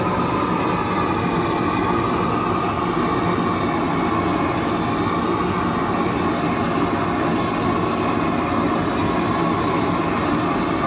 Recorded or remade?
recorded